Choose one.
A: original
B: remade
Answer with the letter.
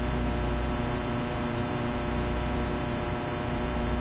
B